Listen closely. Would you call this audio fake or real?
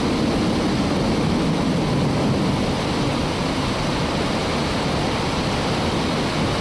real